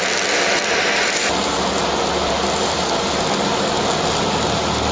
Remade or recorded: recorded